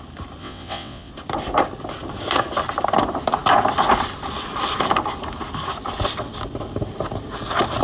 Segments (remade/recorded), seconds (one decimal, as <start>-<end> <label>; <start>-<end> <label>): 0.0-0.4 recorded; 0.4-1.1 remade; 1.1-7.8 recorded